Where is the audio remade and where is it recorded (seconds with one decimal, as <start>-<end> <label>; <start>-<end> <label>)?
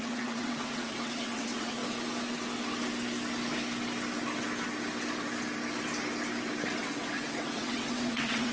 0.0-1.8 remade; 1.8-6.8 recorded; 6.8-8.5 remade